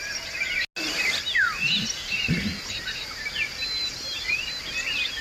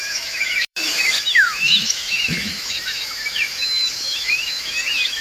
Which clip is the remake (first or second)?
second